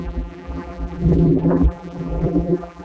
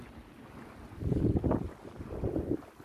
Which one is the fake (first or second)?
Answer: first